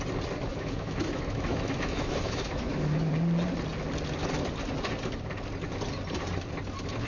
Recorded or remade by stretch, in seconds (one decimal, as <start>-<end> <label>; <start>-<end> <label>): 0.0-0.5 recorded; 0.5-3.1 remade; 3.1-7.1 recorded

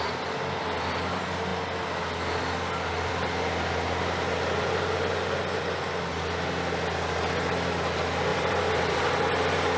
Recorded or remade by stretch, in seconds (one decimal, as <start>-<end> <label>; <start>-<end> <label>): 0.0-8.3 recorded; 8.3-9.2 remade; 9.2-9.8 recorded

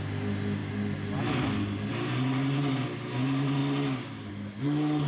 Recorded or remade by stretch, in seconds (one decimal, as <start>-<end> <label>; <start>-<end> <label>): 0.0-5.1 recorded

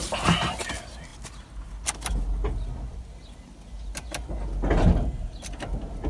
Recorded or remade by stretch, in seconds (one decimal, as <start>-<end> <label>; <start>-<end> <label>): 0.0-6.1 recorded

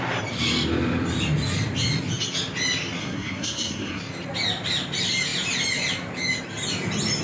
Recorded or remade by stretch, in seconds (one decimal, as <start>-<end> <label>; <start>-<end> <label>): 0.0-3.0 recorded; 3.0-4.0 remade; 4.0-7.2 recorded

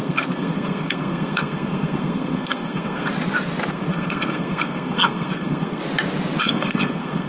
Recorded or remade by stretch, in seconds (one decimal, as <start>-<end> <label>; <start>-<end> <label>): 0.0-3.1 remade; 3.1-3.7 recorded; 3.7-5.8 remade; 5.8-6.4 recorded; 6.4-7.3 remade

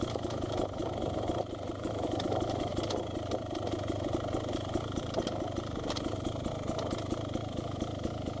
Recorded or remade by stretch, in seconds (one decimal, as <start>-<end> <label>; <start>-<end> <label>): 0.0-0.8 remade; 0.8-1.8 recorded; 1.8-2.7 remade; 2.7-7.5 recorded; 7.5-8.4 remade